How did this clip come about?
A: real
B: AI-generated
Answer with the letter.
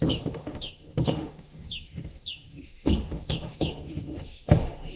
B